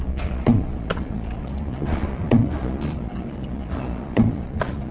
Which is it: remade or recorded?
remade